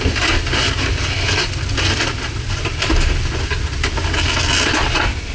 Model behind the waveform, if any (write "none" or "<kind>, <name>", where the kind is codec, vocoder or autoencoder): none